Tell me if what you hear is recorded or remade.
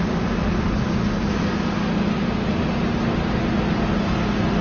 recorded